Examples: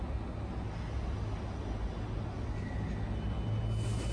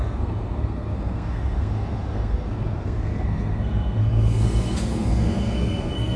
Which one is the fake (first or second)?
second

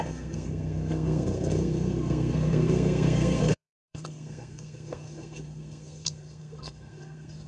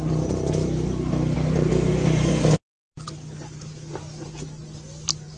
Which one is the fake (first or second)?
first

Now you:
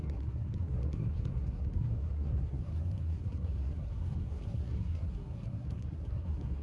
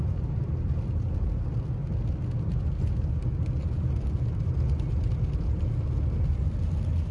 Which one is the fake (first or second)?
first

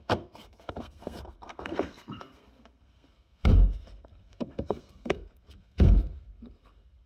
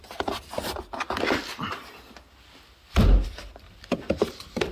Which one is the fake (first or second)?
first